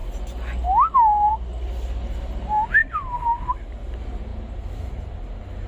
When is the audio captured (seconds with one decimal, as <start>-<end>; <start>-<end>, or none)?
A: 0.0-5.7